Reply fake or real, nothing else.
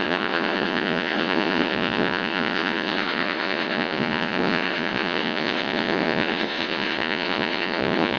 fake